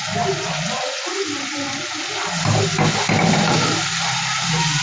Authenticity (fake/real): real